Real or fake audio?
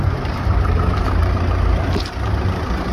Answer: fake